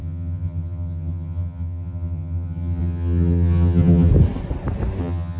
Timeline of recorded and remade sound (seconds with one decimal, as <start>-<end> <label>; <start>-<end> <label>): 0.0-4.1 remade; 4.1-5.0 recorded; 5.0-5.4 remade